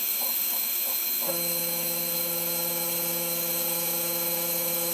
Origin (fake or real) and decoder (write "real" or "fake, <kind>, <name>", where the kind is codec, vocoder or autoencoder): fake, autoencoder, DAC-VAE